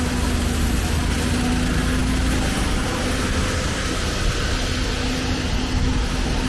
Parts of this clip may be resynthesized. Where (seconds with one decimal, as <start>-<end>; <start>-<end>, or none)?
none